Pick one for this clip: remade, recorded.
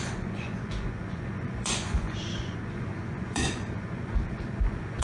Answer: remade